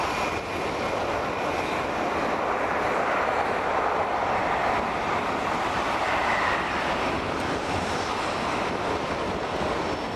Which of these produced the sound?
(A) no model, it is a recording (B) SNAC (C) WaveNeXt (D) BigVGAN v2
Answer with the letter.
A